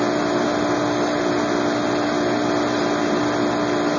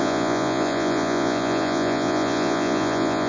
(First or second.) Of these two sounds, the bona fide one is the first